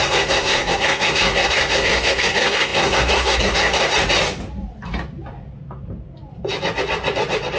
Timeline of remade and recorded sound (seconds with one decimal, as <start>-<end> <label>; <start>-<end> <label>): 0.0-3.9 remade; 3.9-7.6 recorded